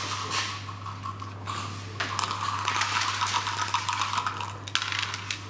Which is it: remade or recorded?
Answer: recorded